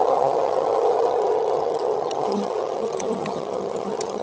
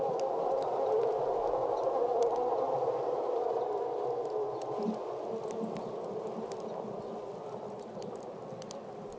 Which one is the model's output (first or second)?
first